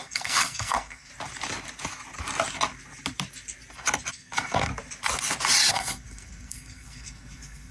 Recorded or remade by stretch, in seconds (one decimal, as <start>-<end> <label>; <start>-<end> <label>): 0.0-1.1 remade; 1.1-4.1 recorded; 4.1-4.7 remade; 4.7-5.7 recorded; 5.7-7.7 remade